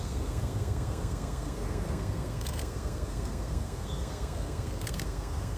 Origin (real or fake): fake